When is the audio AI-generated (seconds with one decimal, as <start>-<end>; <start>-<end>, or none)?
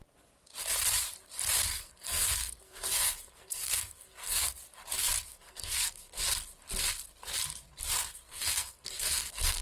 1.7-4.5; 5.3-6.2; 8.0-9.6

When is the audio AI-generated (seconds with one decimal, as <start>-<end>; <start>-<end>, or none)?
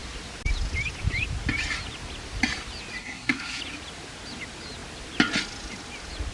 3.0-3.6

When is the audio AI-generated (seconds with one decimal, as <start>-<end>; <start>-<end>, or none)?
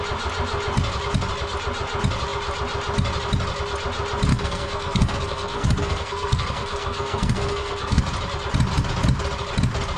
4.3-8.0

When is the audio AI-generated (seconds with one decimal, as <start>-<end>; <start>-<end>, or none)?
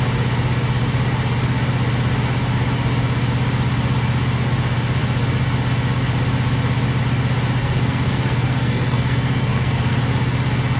7.6-10.0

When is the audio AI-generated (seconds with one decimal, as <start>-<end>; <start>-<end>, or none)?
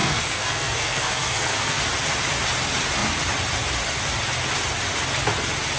0.0-1.8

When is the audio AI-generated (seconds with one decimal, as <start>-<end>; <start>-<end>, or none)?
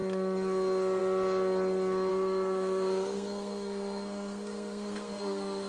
2.1-5.7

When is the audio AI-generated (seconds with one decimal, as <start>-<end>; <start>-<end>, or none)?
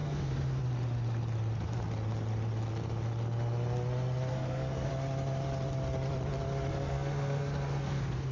0.0-0.6; 4.3-4.9; 6.7-8.3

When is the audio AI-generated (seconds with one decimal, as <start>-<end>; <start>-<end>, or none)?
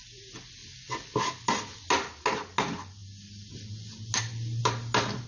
none